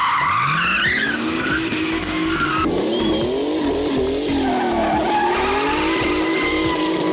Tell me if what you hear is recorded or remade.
recorded